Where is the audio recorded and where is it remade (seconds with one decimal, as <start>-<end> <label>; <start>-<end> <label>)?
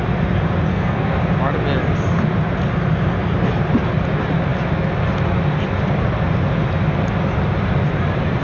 0.0-0.7 recorded; 0.7-1.2 remade; 1.2-8.4 recorded